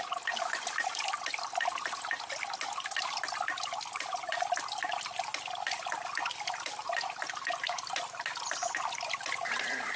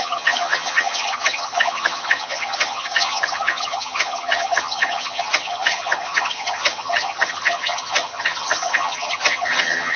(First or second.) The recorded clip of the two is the first